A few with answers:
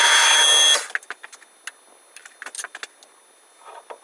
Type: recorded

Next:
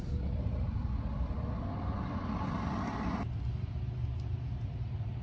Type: recorded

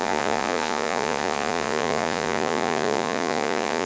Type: remade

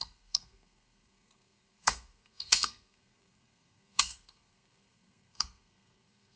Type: remade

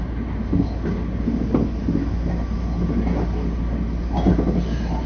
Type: recorded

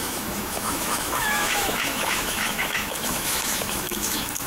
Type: remade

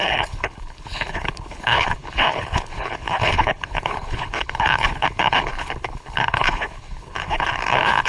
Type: remade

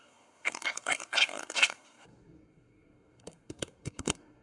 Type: remade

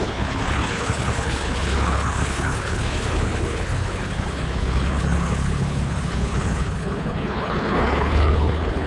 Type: remade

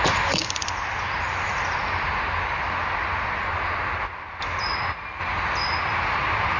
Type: recorded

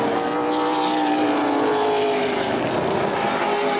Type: recorded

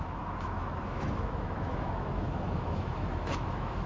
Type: remade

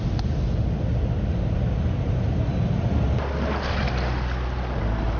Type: recorded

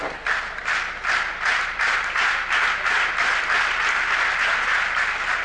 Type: recorded